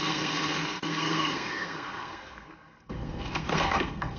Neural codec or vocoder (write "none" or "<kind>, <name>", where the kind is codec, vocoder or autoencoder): codec, SNAC